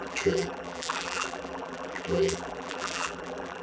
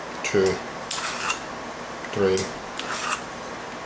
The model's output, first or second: first